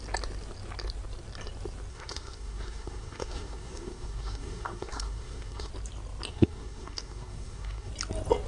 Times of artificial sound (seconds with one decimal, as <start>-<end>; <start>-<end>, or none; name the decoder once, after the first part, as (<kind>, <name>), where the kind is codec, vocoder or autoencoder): 1.9-5.7 (codec, SNAC); 6.3-7.9